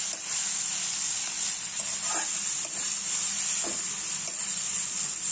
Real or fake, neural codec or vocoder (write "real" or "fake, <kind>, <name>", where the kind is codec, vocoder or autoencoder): real